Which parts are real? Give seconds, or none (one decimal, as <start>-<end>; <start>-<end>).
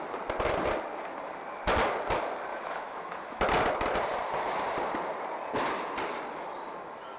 0.0-2.5; 3.4-7.2